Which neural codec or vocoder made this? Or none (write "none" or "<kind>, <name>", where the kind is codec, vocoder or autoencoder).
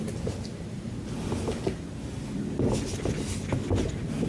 none